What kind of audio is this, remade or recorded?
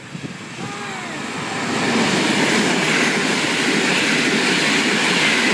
recorded